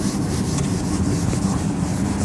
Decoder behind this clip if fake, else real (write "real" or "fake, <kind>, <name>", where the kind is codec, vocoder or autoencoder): real